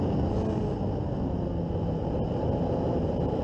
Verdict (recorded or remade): recorded